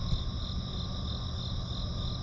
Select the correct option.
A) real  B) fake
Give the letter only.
A